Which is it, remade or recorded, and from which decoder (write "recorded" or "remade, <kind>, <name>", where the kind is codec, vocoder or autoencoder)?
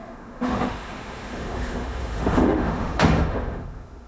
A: remade, autoencoder, DAC-VAE